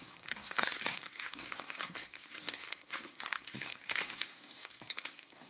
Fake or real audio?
fake